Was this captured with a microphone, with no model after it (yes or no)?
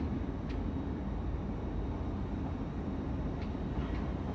yes